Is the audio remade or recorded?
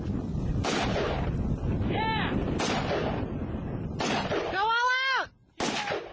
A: recorded